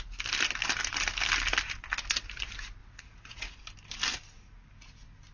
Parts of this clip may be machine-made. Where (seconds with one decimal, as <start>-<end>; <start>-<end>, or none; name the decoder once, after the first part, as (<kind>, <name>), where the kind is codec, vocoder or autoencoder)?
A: 2.8-3.6 (vocoder, Vocos)